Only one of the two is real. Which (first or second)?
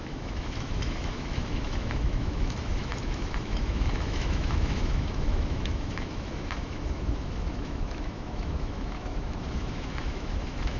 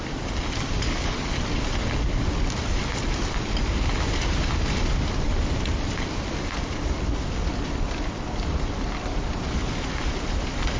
second